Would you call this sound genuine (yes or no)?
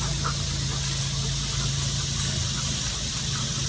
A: yes